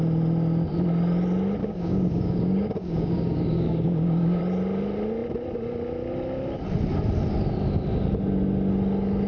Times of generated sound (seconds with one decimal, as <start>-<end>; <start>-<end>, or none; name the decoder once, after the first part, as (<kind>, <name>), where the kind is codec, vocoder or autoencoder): 1.6-4.4 (codec, DAC)

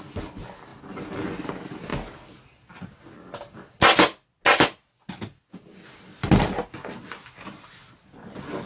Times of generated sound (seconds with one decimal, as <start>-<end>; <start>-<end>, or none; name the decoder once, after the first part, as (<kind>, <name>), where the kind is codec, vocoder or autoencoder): none

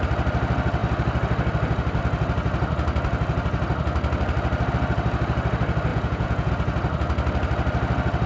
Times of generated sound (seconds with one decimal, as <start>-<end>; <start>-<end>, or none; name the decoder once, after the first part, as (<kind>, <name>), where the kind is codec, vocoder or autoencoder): 5.9-6.5 (vocoder, Vocos)

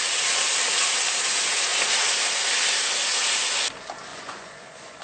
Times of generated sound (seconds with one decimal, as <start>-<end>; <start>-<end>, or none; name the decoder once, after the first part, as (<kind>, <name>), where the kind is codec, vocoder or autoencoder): 4.1-5.0 (vocoder, Vocos)